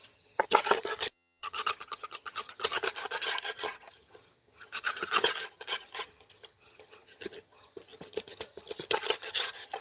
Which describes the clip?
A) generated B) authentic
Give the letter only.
A